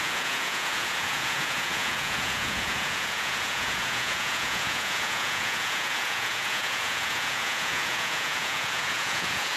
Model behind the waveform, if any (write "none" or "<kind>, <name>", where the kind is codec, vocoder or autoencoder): vocoder, Vocos